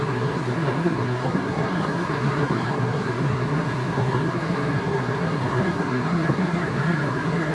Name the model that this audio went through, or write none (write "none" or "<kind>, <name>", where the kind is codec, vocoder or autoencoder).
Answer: codec, SNAC